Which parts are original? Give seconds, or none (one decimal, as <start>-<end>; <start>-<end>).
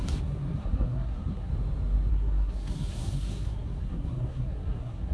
1.5-2.1